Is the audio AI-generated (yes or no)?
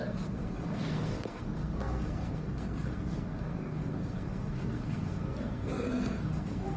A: yes